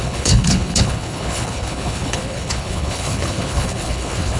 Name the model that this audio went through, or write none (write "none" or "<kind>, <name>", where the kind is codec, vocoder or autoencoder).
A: codec, HILCodec